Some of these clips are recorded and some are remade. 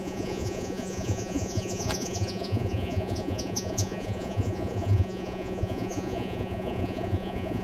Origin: remade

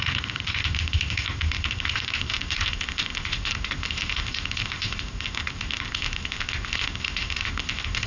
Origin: remade